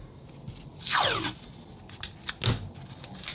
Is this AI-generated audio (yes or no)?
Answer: no